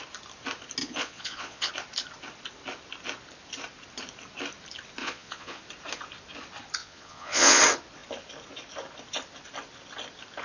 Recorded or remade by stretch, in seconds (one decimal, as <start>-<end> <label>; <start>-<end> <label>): 0.0-0.8 recorded; 0.8-1.7 remade; 1.7-5.0 recorded; 5.0-5.6 remade; 5.6-6.8 recorded; 6.8-7.6 remade; 7.6-10.4 recorded